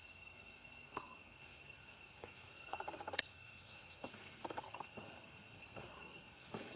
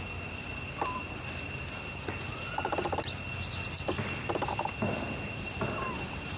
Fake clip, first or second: first